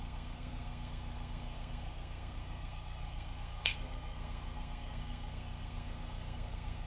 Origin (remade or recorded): remade